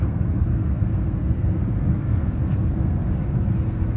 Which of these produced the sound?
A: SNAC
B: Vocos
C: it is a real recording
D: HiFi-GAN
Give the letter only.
A